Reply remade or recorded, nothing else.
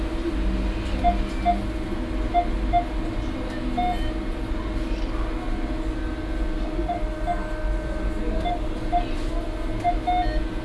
recorded